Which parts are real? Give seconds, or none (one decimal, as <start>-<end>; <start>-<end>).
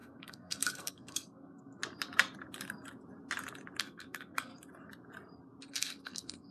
1.8-3.8; 4.5-5.7